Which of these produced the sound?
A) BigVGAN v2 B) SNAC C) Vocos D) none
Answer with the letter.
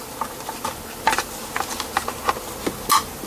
D